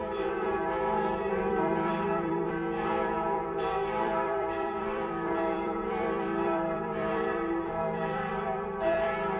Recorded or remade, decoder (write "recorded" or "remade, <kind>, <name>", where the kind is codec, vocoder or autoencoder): remade, vocoder, BigVGAN v2